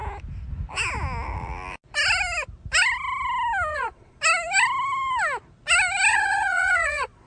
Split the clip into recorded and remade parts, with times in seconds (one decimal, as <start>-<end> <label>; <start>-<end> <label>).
0.0-3.7 recorded; 3.7-4.2 remade; 4.2-6.1 recorded; 6.1-7.3 remade